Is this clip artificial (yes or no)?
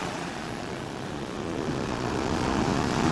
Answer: yes